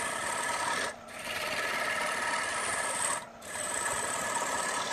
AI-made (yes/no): no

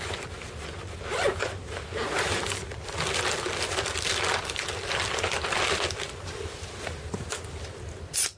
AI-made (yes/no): no